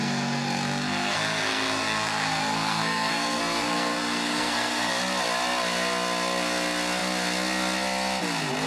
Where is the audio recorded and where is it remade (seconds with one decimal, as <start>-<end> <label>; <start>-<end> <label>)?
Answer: 0.0-4.9 remade; 4.9-8.7 recorded